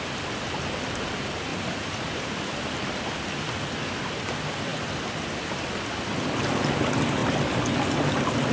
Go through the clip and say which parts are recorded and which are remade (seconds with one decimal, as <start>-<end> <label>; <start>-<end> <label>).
0.0-1.5 recorded; 1.5-2.8 remade; 2.8-8.5 recorded